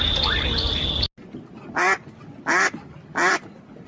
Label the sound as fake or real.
real